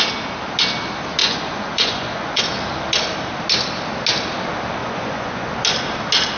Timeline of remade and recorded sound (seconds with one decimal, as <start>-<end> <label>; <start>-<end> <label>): 0.0-1.2 recorded; 1.2-2.4 remade; 2.4-4.8 recorded; 4.8-5.5 remade; 5.5-6.4 recorded